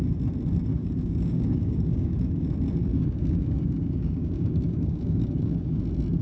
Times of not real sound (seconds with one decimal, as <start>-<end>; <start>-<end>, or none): 0.7-2.5; 2.9-5.8